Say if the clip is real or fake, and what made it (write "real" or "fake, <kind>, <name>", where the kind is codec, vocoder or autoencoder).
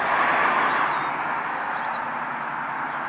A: real